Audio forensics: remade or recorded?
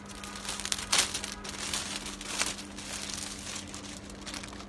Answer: recorded